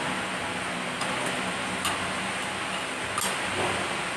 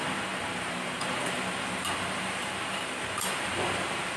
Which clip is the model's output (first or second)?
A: second